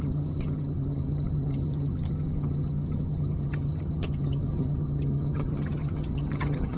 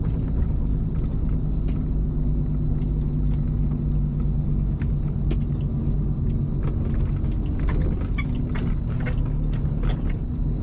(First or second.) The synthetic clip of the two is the first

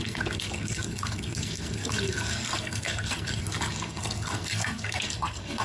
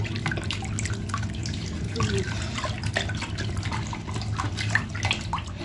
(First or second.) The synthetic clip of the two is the first